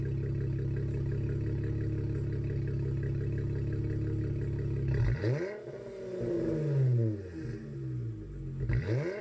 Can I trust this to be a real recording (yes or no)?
yes